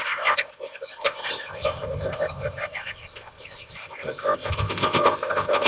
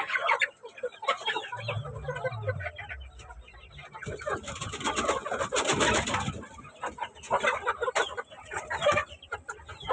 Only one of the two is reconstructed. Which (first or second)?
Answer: first